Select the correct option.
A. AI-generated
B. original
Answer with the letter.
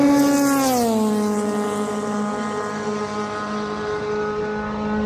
B